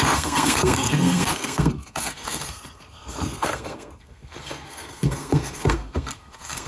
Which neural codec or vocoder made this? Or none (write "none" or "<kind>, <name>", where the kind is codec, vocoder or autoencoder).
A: codec, SNAC